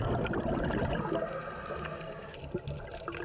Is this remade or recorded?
recorded